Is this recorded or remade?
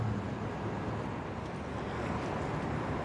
recorded